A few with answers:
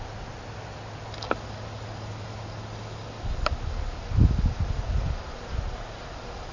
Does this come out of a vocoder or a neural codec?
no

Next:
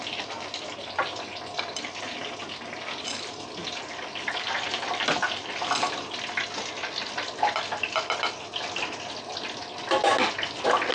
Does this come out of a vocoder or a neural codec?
no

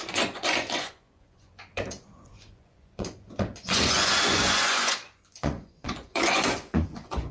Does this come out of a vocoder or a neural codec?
yes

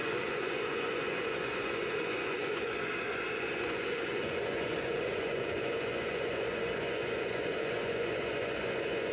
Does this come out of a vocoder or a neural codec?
yes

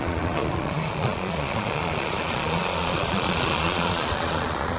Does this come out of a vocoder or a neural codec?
yes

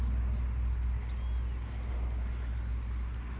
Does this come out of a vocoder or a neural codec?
no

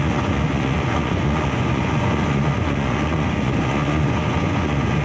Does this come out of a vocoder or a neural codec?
yes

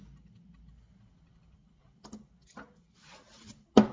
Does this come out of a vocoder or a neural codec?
no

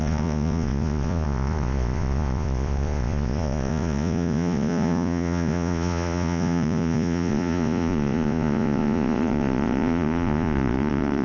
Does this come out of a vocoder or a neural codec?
yes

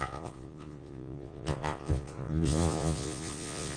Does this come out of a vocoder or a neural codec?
yes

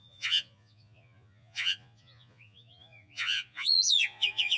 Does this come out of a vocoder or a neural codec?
yes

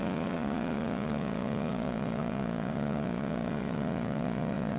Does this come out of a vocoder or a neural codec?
yes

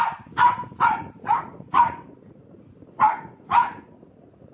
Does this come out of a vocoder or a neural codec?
yes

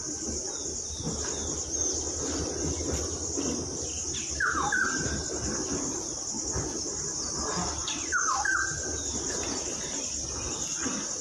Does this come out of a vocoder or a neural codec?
no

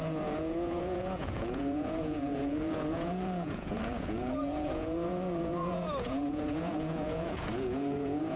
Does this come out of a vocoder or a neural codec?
yes